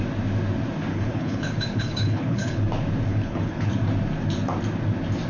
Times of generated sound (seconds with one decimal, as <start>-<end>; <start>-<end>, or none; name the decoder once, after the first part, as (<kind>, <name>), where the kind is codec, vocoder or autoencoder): 0.9-2.6 (codec, HILCodec); 3.1-3.7